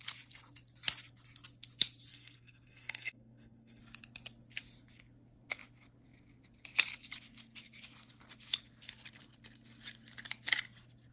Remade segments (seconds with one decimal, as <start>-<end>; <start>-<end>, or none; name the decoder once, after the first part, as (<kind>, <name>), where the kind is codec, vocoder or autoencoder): 2.1-3.8 (codec, SNAC)